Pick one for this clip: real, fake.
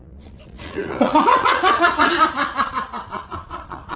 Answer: fake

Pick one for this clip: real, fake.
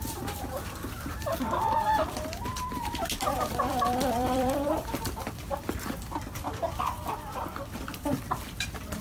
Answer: fake